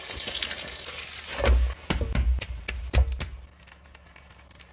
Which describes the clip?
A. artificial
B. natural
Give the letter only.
B